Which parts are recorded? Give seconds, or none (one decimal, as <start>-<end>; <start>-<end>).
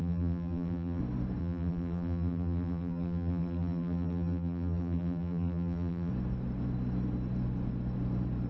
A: 1.0-1.4; 6.1-8.5